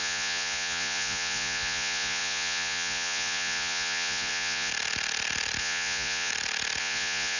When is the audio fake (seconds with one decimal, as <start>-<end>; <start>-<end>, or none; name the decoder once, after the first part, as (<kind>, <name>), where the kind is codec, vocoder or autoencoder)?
0.0-4.7 (vocoder, Vocos); 5.6-6.3; 6.8-7.4